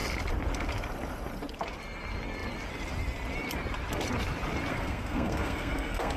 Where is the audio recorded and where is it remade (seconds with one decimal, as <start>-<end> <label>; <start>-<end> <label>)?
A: 0.0-4.7 recorded; 4.7-6.2 remade